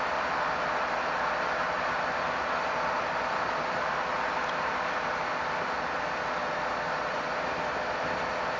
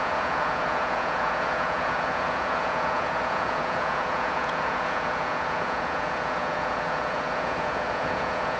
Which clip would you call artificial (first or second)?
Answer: second